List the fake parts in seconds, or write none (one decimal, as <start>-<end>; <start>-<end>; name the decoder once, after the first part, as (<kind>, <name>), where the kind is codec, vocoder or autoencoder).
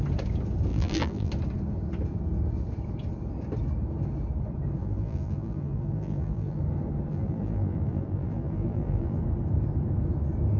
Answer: 0.7-1.3 (vocoder, BigVGAN v2); 4.8-6.6; 7.1-9.2